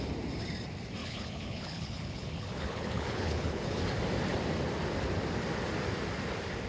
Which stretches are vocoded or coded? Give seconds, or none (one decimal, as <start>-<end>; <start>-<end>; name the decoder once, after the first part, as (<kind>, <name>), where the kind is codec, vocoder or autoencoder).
1.0-3.8 (codec, HILCodec)

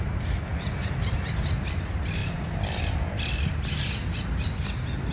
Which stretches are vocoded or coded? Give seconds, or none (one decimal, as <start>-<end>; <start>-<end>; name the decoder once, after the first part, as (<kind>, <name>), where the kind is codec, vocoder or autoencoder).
none

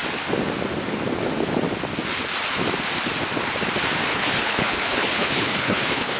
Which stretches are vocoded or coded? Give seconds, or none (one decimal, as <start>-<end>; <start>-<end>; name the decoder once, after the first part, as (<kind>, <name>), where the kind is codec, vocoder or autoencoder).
4.1-6.2 (codec, HILCodec)

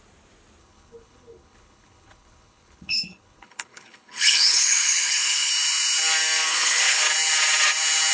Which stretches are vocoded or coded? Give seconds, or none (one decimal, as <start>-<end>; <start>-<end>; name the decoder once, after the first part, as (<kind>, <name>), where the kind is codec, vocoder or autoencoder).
0.6-5.5 (codec, HILCodec); 6.5-7.0

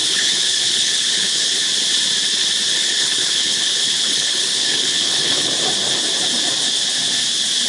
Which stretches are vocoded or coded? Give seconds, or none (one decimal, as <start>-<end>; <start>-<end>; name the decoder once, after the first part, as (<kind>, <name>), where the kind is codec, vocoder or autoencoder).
0.0-1.6 (codec, HILCodec); 2.8-5.5